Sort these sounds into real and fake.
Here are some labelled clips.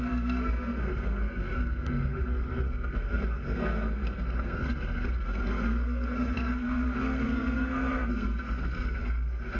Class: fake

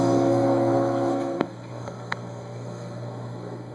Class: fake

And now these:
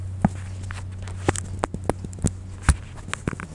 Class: real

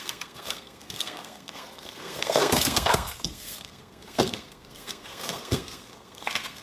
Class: fake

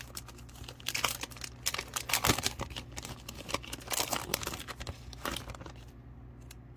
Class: real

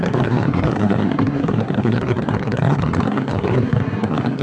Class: fake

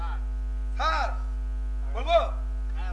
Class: real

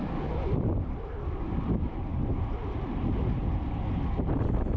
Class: real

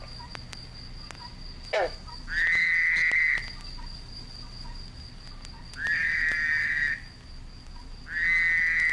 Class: real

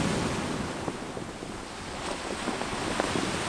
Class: real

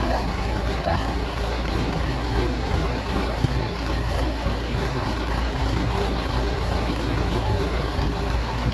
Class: fake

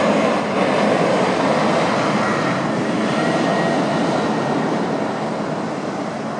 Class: real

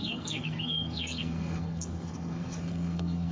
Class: fake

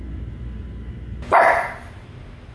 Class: real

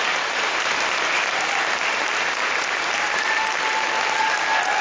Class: real